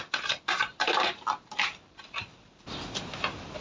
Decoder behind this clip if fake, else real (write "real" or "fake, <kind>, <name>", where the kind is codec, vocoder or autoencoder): real